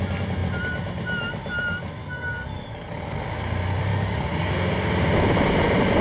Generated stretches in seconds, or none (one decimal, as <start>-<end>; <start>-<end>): 2.0-3.2; 3.9-4.5